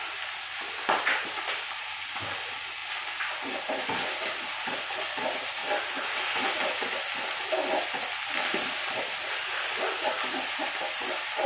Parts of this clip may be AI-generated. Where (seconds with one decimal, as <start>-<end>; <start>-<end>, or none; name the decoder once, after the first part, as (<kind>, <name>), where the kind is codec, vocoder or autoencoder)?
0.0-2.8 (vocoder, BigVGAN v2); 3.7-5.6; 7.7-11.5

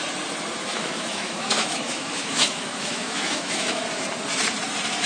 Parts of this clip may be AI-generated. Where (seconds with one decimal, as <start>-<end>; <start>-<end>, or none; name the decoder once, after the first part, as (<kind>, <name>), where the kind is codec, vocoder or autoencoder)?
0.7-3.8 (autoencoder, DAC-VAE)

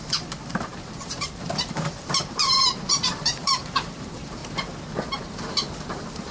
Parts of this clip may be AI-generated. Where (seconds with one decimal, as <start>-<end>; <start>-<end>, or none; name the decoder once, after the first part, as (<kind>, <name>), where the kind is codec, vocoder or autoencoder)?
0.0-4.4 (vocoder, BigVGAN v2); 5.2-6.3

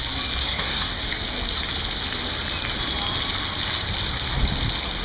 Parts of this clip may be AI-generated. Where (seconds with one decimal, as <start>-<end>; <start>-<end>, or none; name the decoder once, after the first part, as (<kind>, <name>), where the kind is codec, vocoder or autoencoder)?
0.4-1.0 (codec, SNAC)

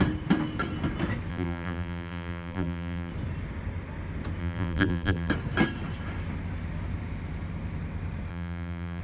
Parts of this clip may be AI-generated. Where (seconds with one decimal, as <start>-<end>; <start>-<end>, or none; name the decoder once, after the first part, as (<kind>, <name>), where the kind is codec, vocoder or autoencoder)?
1.3-3.1 (vocoder, BigVGAN v2); 4.4-5.3; 8.3-9.0

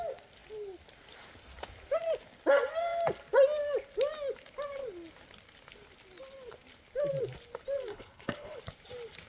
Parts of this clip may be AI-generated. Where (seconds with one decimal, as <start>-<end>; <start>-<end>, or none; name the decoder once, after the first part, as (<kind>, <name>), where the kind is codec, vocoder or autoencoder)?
7.9-8.6 (codec, HILCodec)

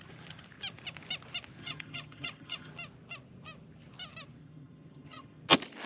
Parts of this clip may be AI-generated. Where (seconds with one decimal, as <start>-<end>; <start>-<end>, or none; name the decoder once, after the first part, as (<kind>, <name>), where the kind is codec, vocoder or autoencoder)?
1.6-2.7 (vocoder, HiFi-GAN); 4.4-5.4

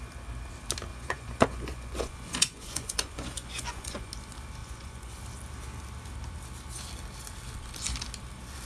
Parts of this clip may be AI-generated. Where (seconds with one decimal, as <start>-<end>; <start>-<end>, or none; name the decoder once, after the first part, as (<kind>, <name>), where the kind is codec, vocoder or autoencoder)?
0.9-4.1 (vocoder, Vocos); 4.6-5.2